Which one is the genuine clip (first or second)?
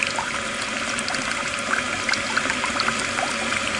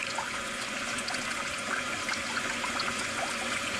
first